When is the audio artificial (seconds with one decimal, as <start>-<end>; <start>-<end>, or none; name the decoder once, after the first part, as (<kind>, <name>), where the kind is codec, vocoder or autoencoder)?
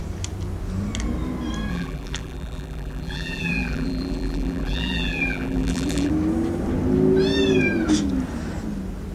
1.7-6.1 (vocoder, BigVGAN v2)